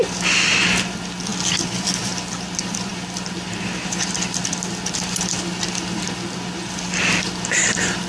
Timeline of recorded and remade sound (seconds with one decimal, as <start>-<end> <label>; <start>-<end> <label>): 0.0-8.1 recorded